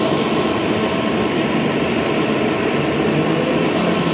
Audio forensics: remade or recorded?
recorded